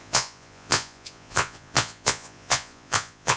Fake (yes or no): yes